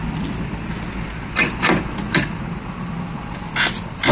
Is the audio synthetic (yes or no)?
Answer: no